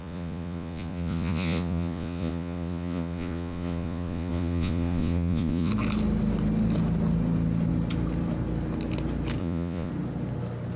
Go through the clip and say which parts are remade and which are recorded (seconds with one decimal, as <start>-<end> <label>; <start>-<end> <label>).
0.0-5.7 remade; 5.7-9.4 recorded; 9.4-9.9 remade; 9.9-10.8 recorded